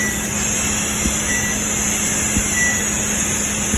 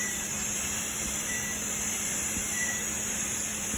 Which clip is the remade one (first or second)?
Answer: second